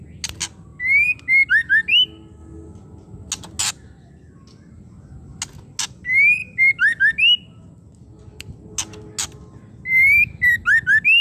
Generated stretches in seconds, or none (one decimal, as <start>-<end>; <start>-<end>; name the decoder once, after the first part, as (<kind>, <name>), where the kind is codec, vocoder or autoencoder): none